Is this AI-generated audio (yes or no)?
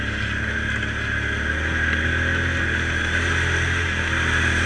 no